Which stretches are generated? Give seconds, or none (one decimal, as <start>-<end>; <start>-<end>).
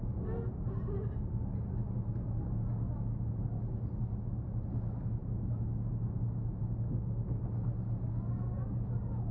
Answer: 5.2-6.6